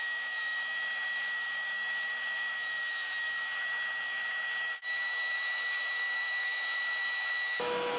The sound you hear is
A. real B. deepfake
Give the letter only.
B